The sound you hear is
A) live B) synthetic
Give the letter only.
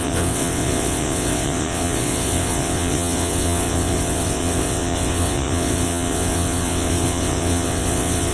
B